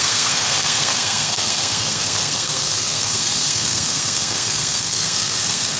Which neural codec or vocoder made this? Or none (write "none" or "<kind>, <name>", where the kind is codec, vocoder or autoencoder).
codec, SNAC